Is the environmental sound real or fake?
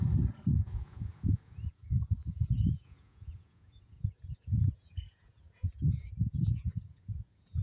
fake